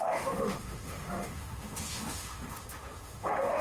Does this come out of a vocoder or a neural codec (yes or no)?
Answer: yes